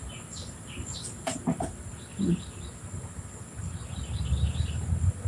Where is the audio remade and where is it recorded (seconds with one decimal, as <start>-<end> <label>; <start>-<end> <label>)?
0.0-5.3 recorded